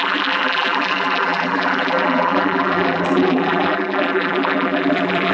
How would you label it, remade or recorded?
remade